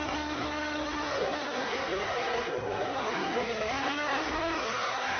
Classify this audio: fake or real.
fake